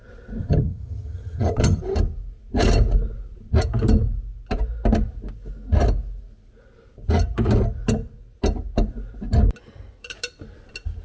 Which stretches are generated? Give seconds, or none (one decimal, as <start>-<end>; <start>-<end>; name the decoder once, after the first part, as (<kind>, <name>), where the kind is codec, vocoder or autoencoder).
0.4-1.8 (vocoder, HiFi-GAN)